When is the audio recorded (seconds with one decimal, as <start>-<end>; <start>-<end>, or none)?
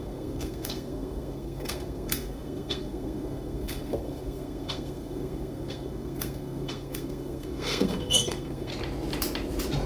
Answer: 8.7-9.9